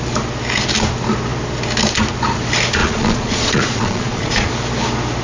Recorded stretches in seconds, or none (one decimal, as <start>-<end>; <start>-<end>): 0.0-2.8; 4.5-5.2